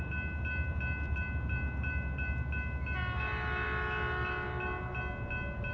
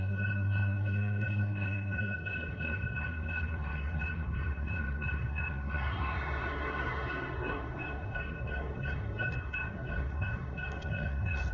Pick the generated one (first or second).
second